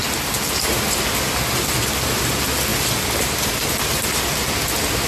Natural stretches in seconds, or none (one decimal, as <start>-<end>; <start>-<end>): 0.0-2.7; 3.8-5.1